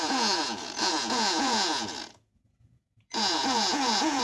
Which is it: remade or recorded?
remade